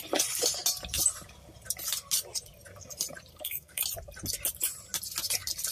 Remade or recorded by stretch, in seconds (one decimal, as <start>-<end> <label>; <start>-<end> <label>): 0.0-3.3 recorded; 3.3-3.8 remade; 3.8-5.7 recorded